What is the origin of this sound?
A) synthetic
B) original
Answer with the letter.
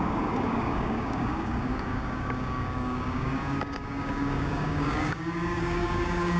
A